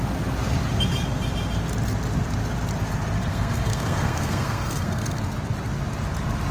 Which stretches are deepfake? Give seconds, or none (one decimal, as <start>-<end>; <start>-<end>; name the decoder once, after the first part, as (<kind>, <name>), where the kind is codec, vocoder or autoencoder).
3.3-5.2 (codec, SNAC)